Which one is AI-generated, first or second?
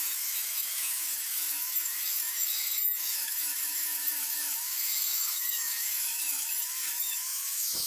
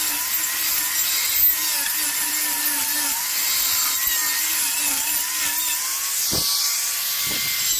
first